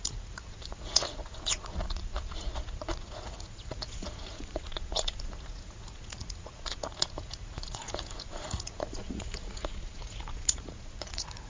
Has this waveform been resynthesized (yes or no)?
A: yes